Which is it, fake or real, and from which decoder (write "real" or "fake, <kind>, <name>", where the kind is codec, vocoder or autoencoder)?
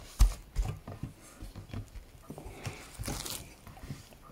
real